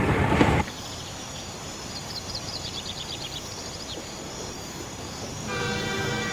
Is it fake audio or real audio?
fake